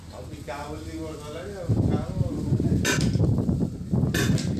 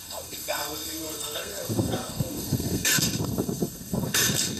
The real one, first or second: first